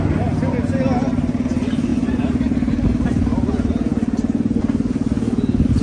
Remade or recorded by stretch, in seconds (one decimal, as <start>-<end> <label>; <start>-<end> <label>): 0.0-5.8 recorded